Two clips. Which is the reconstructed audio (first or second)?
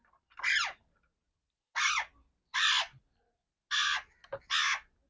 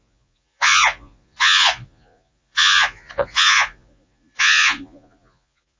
second